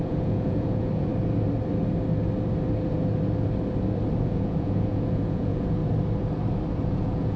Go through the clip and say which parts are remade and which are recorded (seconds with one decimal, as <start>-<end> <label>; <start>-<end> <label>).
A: 0.0-1.1 remade; 1.1-4.3 recorded; 4.3-5.8 remade; 5.8-6.9 recorded; 6.9-7.4 remade